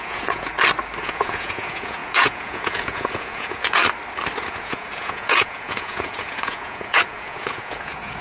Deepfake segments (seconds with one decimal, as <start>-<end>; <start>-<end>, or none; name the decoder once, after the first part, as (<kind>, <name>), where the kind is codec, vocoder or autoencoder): 0.0-0.5 (vocoder, Vocos); 1.0-3.8; 4.4-8.2